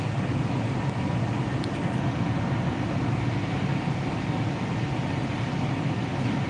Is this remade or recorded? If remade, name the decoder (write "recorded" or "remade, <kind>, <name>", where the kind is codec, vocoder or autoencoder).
recorded